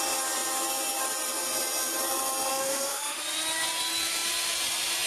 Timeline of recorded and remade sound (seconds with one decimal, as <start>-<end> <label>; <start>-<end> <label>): 0.0-2.5 recorded; 2.5-3.2 remade; 3.2-5.1 recorded